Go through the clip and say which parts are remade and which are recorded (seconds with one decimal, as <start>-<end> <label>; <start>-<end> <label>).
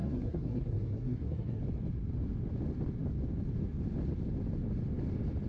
0.0-1.6 remade; 1.6-5.5 recorded